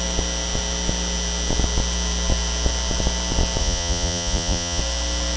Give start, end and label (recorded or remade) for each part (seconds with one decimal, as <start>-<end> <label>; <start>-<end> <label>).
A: 0.0-3.6 recorded; 3.6-4.8 remade; 4.8-5.4 recorded